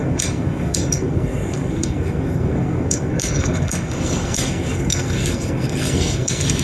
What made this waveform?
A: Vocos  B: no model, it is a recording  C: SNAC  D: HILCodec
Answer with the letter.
C